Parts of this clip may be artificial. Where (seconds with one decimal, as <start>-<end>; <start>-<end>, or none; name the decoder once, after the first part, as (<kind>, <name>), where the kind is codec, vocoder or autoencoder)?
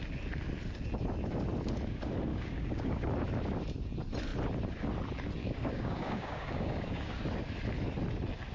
2.3-3.1 (codec, DAC); 5.4-7.2